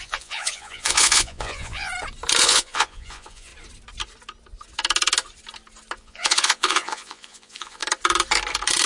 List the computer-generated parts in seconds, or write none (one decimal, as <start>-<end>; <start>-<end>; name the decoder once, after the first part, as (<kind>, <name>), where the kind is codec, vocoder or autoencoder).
0.0-1.9 (vocoder, Vocos); 2.4-3.5; 6.0-7.8